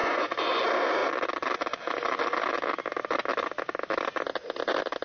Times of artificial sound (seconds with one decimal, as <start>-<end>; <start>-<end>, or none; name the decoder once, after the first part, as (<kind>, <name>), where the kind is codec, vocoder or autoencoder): 0.0-0.6 (vocoder, Vocos)